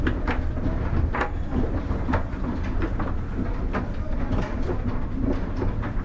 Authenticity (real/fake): real